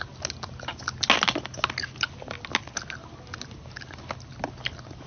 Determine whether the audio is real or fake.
real